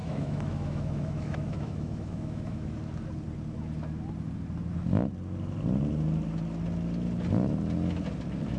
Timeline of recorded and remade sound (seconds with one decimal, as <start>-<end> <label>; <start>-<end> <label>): 0.0-2.7 remade; 2.7-8.6 recorded